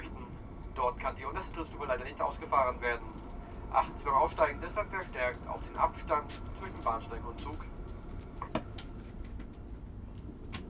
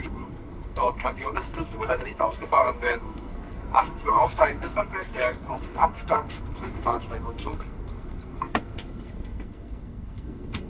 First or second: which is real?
first